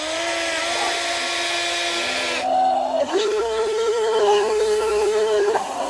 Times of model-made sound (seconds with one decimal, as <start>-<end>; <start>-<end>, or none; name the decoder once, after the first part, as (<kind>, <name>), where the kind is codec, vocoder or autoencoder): 3.0-5.9 (codec, SNAC)